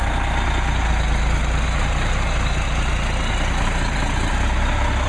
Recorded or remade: recorded